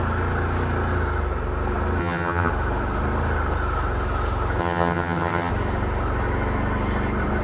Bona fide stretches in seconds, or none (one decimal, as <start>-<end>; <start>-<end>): 0.0-2.0; 2.5-4.6; 5.5-7.4